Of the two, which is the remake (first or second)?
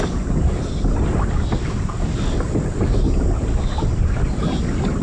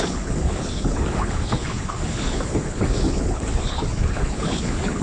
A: second